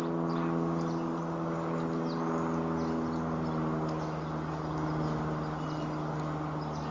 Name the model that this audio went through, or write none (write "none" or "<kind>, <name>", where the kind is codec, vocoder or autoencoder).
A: none